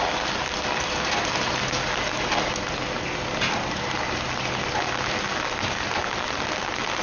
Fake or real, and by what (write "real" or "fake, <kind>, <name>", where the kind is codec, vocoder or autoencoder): real